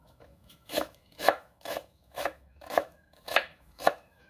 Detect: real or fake fake